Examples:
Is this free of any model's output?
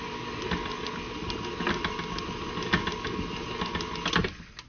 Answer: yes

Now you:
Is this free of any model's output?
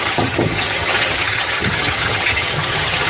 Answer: no